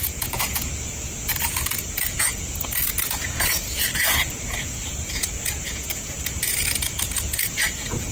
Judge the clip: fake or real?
fake